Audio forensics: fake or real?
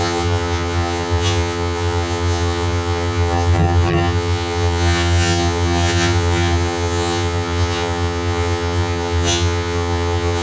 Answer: fake